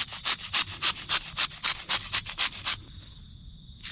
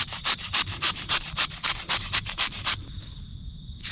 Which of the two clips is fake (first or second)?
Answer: second